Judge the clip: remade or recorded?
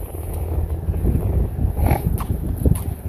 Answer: recorded